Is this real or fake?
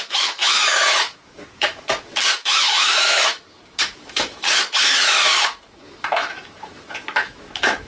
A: fake